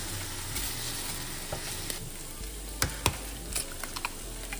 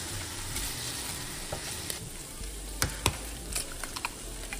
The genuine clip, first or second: first